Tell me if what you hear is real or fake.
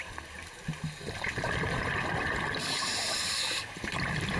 real